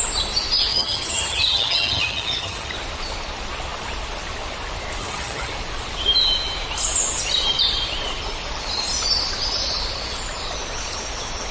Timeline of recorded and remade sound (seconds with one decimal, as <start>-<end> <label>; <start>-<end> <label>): 0.0-0.7 recorded; 0.7-2.7 remade; 2.7-5.0 recorded; 5.0-5.5 remade; 5.5-11.5 recorded